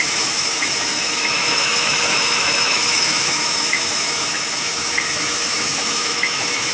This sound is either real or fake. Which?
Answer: fake